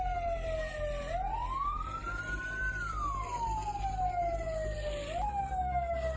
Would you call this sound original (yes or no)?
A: yes